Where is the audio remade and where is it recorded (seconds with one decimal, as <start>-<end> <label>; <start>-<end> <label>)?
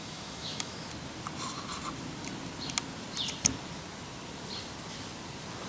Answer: 0.0-0.9 remade; 0.9-5.7 recorded